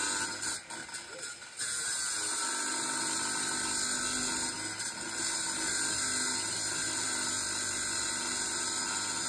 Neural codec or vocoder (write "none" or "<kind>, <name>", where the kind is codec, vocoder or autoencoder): none